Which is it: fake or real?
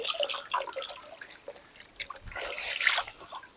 real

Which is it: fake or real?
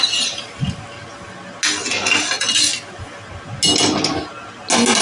real